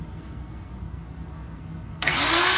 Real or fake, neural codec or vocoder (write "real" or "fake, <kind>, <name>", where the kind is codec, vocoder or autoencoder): fake, codec, SNAC